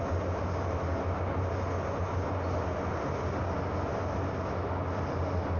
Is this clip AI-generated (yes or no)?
no